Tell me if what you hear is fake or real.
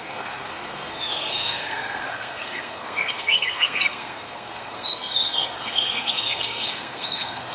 fake